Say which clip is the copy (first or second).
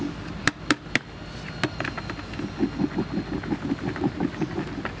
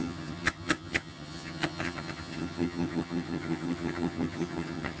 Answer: second